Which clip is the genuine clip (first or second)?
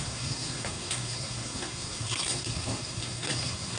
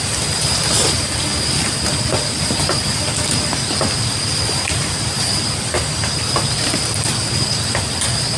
second